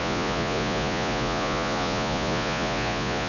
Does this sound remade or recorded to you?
remade